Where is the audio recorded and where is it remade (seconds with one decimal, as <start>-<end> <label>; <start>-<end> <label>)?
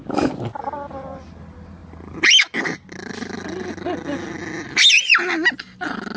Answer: 0.0-6.2 recorded